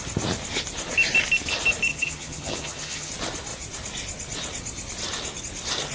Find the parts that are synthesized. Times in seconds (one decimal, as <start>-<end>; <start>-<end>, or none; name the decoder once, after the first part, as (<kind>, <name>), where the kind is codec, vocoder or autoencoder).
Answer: 1.9-3.1 (vocoder, HiFi-GAN)